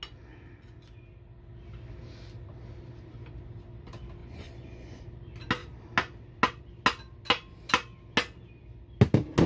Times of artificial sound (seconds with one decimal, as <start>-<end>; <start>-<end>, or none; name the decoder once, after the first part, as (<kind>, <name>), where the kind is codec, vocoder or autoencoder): 4.2-5.0 (vocoder, Vocos)

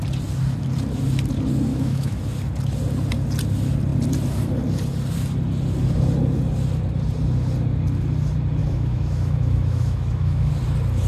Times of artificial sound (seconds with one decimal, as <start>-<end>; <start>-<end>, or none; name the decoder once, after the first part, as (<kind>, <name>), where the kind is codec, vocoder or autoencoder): 1.7-2.2 (autoencoder, DAC-VAE); 8.6-10.5